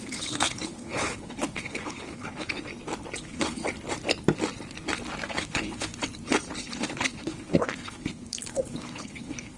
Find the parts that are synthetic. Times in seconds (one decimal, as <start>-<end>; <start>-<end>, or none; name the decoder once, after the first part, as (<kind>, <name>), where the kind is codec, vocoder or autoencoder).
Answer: 0.0-2.7 (codec, HILCodec); 3.2-3.6; 5.3-5.9; 6.6-9.6